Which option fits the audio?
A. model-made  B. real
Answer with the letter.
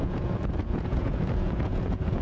A